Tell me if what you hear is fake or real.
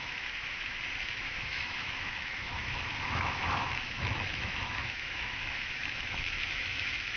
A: fake